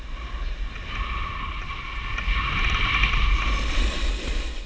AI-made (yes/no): no